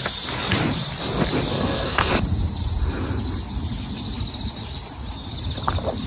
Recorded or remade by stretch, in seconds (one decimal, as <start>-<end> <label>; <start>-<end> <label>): 0.0-1.5 recorded; 1.5-2.1 remade; 2.1-6.1 recorded